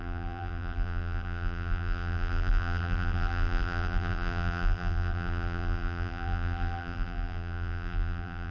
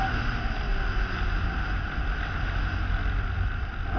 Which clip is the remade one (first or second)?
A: first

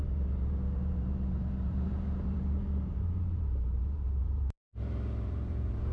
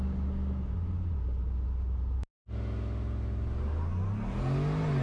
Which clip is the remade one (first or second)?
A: first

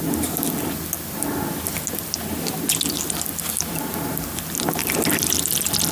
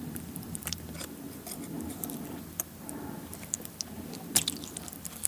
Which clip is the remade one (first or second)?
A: second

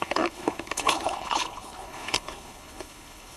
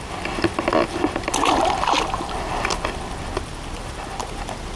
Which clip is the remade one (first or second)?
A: first